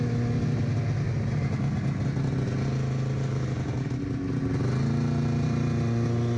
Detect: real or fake real